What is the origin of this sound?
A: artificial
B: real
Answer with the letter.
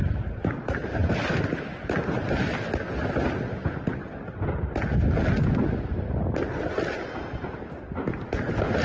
B